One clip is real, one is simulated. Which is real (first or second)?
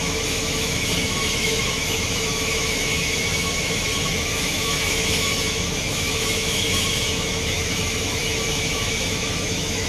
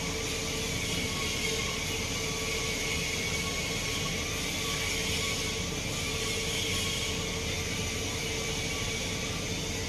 second